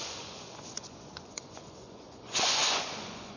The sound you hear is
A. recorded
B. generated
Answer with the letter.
B